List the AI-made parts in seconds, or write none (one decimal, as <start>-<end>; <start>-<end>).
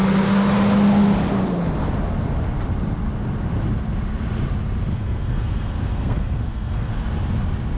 4.9-6.9